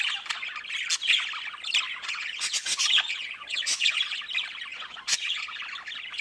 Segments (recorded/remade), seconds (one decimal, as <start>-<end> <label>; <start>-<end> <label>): 0.0-1.9 recorded; 1.9-4.2 remade; 4.2-4.7 recorded; 4.7-5.6 remade; 5.6-6.2 recorded

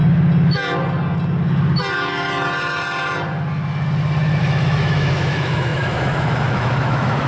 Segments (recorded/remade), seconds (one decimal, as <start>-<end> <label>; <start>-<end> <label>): 0.0-4.4 recorded; 4.4-7.3 remade

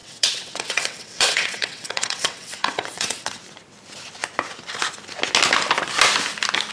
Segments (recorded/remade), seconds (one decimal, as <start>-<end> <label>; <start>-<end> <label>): 0.0-3.4 remade; 3.4-6.7 recorded

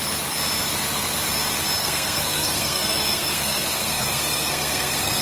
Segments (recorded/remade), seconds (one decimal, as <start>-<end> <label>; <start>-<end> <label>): 0.0-1.8 recorded; 1.8-5.2 remade

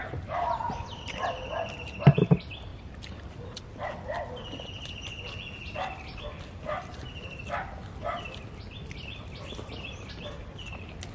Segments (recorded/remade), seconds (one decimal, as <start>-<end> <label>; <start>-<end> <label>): 0.0-2.1 remade; 2.1-2.7 recorded; 2.7-3.6 remade; 3.6-7.8 recorded; 7.8-10.7 remade; 10.7-11.1 recorded